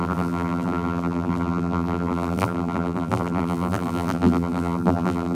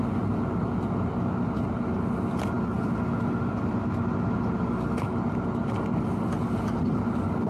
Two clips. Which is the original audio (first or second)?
second